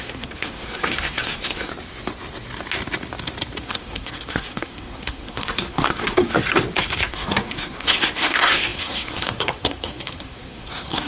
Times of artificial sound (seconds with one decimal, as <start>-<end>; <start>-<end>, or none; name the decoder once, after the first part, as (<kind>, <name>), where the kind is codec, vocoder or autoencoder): 0.0-1.7 (codec, SNAC); 3.6-6.4; 7.1-11.1